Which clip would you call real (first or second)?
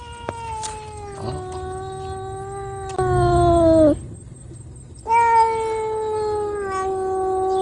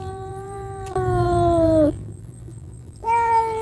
first